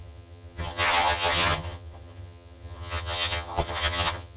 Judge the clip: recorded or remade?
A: remade